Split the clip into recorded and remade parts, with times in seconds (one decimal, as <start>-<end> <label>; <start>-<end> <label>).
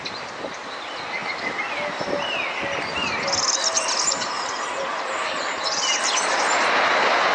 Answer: 0.0-7.3 recorded